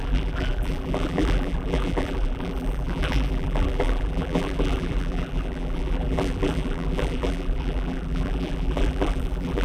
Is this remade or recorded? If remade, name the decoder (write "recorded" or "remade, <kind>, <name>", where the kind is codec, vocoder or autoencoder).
remade, vocoder, BigVGAN v2